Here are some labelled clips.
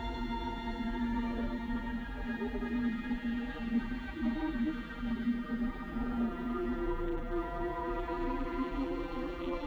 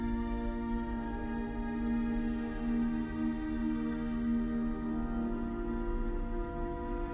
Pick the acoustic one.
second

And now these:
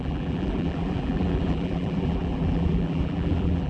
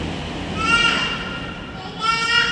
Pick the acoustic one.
second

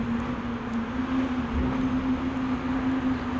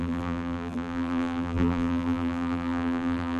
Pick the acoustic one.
first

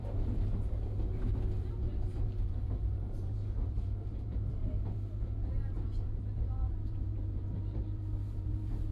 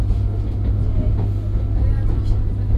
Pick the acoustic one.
second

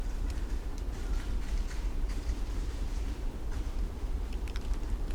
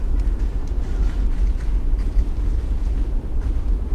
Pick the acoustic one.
second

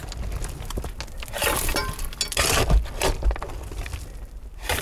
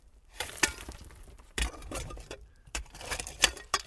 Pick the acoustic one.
first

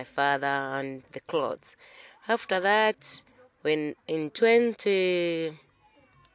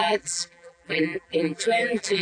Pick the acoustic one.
first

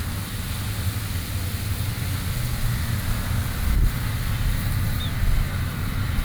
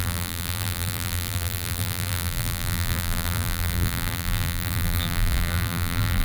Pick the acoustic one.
first